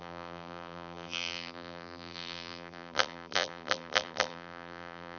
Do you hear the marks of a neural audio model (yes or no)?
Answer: yes